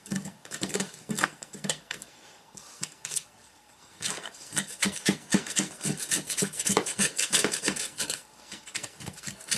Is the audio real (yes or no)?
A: no